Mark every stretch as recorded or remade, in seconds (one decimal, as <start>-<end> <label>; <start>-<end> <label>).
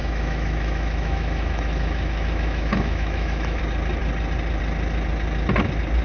0.0-3.6 remade; 3.6-6.0 recorded